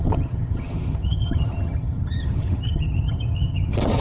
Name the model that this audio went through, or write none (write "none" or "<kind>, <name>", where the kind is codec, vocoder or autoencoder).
vocoder, HiFi-GAN